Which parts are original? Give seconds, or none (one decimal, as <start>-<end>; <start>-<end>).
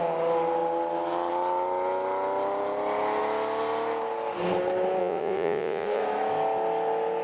0.0-5.0; 6.0-7.2